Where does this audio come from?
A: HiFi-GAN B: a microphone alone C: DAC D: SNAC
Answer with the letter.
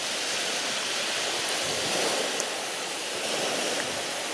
B